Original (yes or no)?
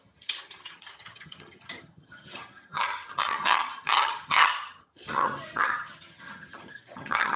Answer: no